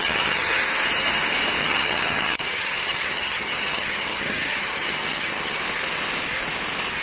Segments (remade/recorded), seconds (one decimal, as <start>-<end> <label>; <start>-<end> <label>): 0.0-0.6 remade; 0.6-1.6 recorded; 1.6-5.6 remade; 5.6-7.0 recorded